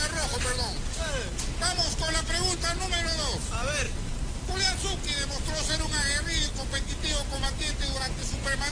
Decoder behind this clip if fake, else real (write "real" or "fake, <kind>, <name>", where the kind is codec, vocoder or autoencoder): real